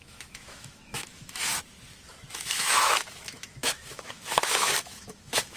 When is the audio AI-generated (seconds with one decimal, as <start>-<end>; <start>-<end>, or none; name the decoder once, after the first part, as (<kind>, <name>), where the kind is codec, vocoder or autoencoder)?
0.0-1.5 (autoencoder, DAC-VAE); 2.3-5.6